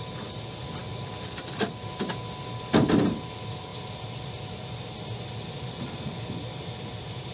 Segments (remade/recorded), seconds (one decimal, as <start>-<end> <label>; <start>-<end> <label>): 0.0-7.3 recorded